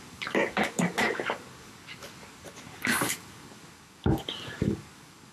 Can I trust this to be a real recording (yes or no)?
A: no